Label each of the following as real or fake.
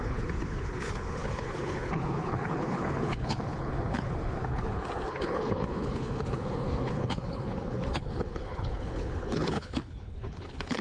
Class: fake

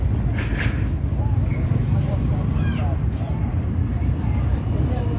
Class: fake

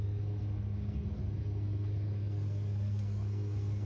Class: fake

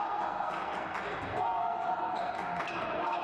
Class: fake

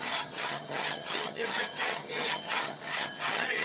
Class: fake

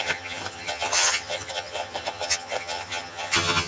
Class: fake